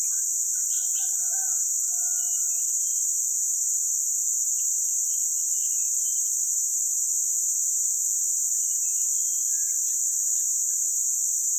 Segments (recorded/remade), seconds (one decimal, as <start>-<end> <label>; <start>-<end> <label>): 0.0-11.6 recorded